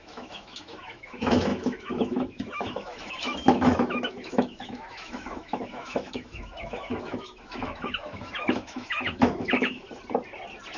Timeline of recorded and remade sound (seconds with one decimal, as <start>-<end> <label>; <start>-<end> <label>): 0.0-9.8 remade; 9.8-10.8 recorded